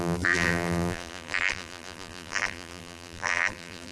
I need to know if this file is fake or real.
fake